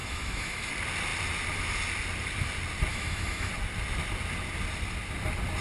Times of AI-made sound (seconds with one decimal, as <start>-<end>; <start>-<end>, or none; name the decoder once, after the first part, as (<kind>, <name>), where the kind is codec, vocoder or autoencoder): 0.0-0.7 (autoencoder, DAC-VAE); 2.9-3.5